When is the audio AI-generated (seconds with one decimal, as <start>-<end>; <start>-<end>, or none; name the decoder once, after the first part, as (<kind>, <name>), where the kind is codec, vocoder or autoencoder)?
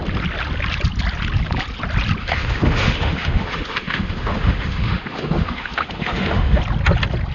2.2-6.6 (autoencoder, DAC-VAE)